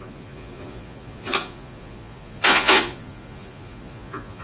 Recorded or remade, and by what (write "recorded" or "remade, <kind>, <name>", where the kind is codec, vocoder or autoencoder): remade, vocoder, Vocos